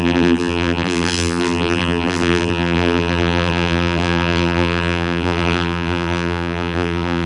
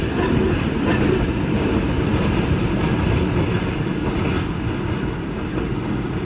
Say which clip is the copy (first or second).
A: first